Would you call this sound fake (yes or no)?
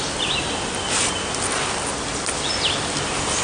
no